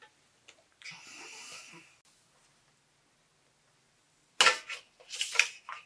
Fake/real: real